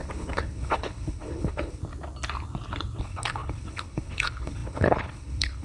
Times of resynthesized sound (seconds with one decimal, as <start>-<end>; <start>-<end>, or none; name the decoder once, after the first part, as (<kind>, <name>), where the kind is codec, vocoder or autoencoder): 0.0-1.8 (codec, HILCodec); 3.0-5.6